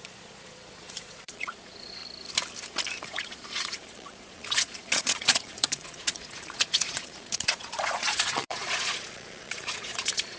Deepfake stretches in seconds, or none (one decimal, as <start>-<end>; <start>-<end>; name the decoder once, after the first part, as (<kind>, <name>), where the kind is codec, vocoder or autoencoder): 0.0-2.0 (vocoder, Vocos); 3.0-10.4